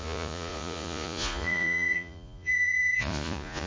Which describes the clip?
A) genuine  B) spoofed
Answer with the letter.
B